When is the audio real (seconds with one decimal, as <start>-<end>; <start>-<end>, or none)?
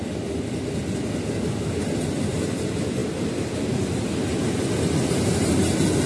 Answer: 0.0-6.1